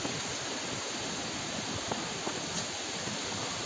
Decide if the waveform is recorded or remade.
recorded